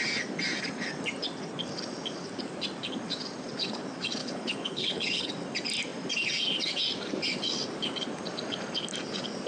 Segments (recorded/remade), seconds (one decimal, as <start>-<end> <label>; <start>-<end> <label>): 0.0-4.2 recorded; 4.2-5.3 remade; 5.3-9.5 recorded